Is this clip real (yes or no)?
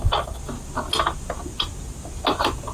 yes